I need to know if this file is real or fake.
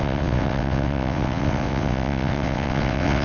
fake